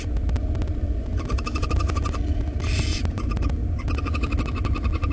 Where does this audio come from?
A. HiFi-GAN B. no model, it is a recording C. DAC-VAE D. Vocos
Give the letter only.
B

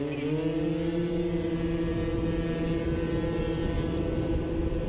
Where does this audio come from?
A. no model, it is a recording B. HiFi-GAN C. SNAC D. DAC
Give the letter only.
A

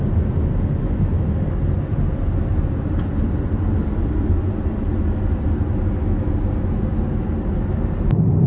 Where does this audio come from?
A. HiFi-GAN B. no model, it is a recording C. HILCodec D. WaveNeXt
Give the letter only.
B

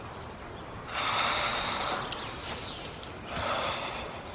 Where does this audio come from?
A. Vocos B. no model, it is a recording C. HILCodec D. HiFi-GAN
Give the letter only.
B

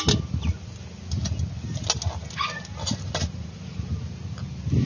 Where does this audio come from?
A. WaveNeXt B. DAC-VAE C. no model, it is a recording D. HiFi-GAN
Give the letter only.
C